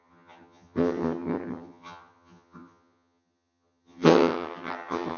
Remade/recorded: remade